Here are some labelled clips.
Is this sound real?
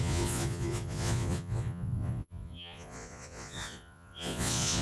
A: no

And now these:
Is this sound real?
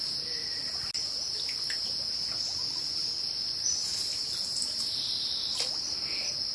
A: yes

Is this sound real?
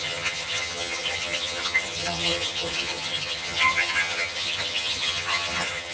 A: no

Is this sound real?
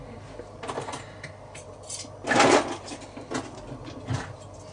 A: yes